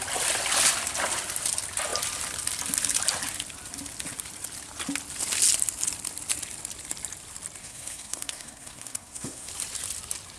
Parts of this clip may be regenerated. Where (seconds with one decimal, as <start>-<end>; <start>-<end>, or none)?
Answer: 7.6-9.5